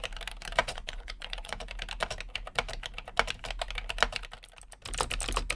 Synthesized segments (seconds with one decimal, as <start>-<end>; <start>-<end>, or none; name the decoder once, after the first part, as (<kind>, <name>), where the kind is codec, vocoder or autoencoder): 0.6-1.6 (vocoder, Vocos)